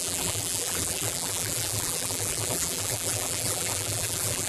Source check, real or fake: fake